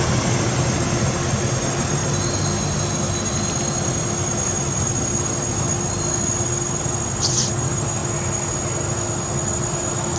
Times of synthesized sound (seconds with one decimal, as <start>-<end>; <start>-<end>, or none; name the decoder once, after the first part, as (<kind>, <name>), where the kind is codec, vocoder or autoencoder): none